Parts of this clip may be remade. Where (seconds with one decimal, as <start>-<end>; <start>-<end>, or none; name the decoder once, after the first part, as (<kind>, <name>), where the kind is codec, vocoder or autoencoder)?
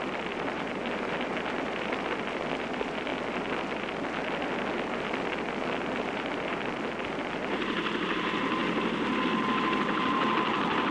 0.0-3.1 (vocoder, BigVGAN v2); 6.0-8.6; 9.6-10.9